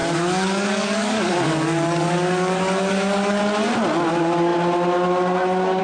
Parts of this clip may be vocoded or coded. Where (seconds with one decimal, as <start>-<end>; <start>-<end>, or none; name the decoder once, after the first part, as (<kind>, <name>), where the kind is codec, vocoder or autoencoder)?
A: 0.0-3.4 (codec, DAC)